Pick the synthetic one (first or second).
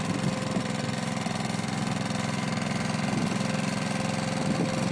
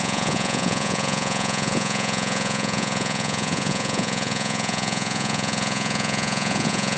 second